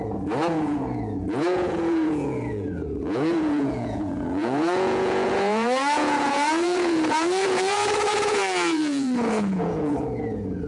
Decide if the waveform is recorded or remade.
remade